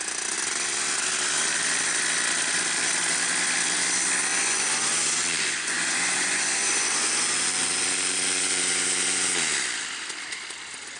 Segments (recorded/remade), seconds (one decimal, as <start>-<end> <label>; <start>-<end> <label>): 0.0-4.3 recorded; 4.3-8.6 remade; 8.6-11.0 recorded